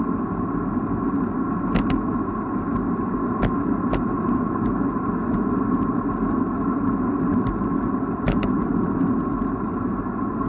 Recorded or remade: recorded